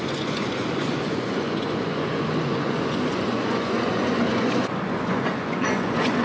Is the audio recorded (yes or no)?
no